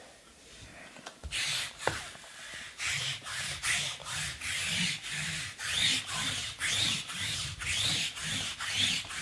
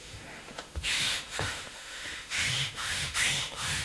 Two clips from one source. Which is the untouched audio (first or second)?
first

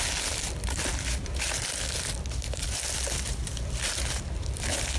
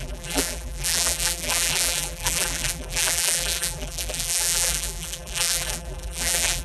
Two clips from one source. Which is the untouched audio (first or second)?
first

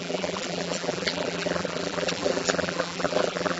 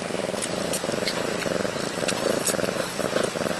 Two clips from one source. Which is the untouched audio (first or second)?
second